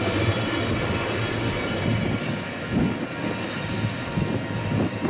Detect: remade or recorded recorded